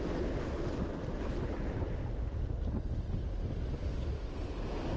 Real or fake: real